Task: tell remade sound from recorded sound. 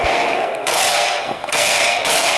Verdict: remade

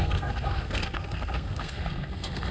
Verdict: remade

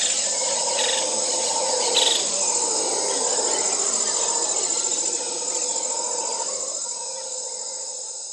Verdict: recorded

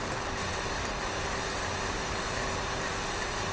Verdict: recorded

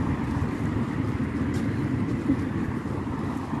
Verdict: recorded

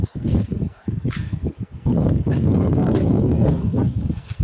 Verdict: remade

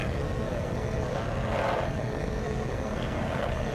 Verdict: remade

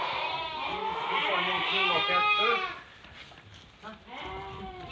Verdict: recorded